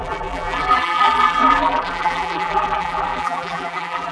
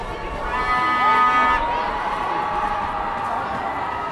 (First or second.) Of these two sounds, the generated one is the first